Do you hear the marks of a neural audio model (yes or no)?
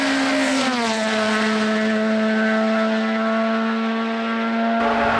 no